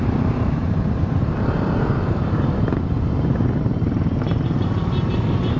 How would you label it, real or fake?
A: fake